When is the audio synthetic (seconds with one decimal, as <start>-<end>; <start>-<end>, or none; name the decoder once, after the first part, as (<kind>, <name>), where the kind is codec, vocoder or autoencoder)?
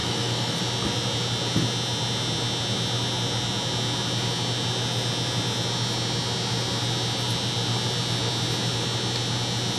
0.0-0.6 (autoencoder, DAC-VAE)